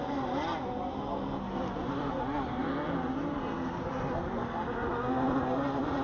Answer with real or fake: real